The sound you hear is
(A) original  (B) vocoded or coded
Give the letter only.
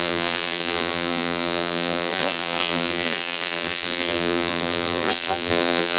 B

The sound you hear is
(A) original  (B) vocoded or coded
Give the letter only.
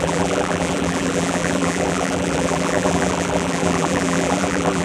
B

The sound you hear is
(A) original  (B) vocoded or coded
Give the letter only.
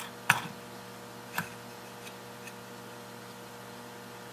A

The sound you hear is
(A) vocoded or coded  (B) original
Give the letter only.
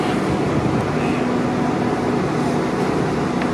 B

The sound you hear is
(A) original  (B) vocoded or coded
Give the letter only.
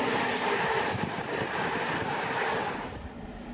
B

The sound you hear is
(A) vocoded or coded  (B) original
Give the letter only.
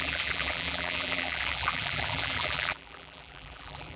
A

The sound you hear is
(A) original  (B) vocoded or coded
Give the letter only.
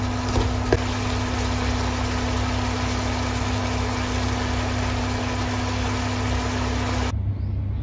A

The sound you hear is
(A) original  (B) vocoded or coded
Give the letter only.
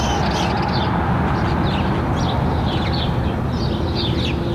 A